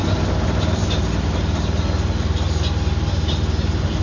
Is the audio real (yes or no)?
yes